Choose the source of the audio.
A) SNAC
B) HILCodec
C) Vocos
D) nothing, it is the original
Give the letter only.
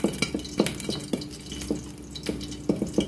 D